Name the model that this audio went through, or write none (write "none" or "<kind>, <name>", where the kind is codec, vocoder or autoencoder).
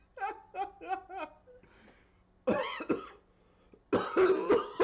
none